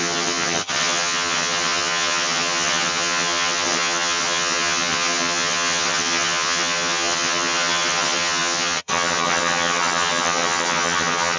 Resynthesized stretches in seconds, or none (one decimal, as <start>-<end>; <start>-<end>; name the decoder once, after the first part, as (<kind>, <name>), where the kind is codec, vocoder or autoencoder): 0.0-11.4 (vocoder, HiFi-GAN)